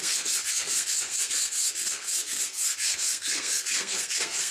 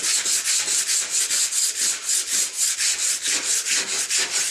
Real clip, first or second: second